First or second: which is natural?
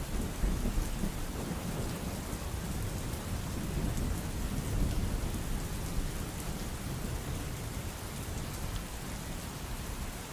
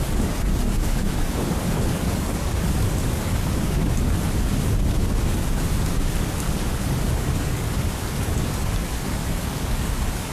first